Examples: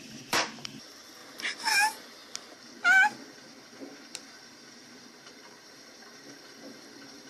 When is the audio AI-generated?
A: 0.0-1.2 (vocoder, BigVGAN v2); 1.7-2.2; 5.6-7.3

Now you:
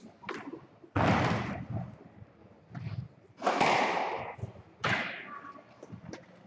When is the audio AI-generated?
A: 2.4-3.6 (vocoder, BigVGAN v2)

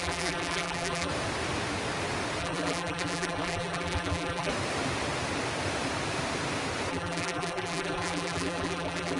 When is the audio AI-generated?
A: 0.0-1.1 (vocoder, BigVGAN v2); 2.4-4.5; 6.9-9.2